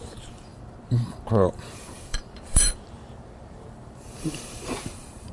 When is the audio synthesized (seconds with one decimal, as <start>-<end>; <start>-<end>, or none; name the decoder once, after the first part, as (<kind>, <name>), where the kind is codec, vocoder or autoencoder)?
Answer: 0.0-5.3 (vocoder, BigVGAN v2)